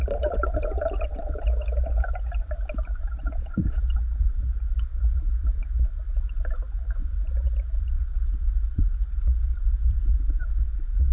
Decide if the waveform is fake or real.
fake